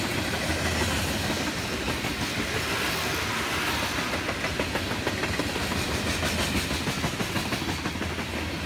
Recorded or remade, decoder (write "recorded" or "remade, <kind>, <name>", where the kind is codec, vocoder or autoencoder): recorded